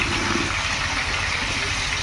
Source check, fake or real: real